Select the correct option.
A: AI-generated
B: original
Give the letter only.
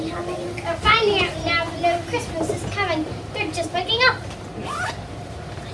B